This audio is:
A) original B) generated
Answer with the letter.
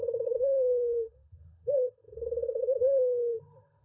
B